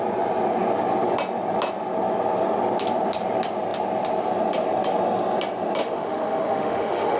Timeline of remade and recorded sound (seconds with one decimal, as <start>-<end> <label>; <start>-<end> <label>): 0.0-5.8 recorded; 5.8-7.2 remade